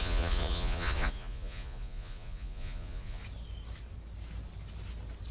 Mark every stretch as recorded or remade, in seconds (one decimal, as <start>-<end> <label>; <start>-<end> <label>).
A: 0.0-3.2 remade; 3.2-5.3 recorded